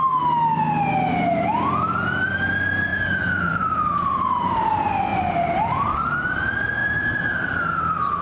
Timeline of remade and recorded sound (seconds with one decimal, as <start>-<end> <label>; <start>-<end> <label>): 0.0-2.9 recorded; 2.9-4.6 remade; 4.6-5.1 recorded; 5.1-5.9 remade; 5.9-6.8 recorded; 6.8-8.2 remade